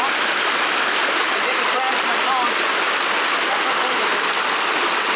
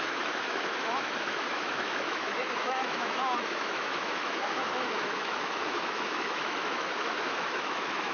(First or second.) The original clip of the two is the first